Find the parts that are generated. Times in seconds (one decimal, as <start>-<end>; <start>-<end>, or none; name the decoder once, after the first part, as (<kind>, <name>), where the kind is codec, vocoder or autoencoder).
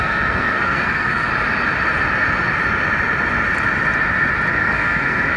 0.0-1.3 (codec, SNAC); 4.5-5.4